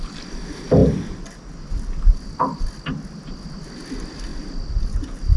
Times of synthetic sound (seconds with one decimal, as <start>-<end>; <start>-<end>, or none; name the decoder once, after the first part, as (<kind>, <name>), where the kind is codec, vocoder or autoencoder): none